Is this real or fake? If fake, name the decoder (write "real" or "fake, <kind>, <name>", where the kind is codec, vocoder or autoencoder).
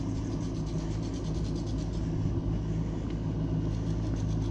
real